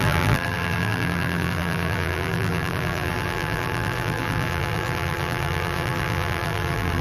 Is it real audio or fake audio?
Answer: fake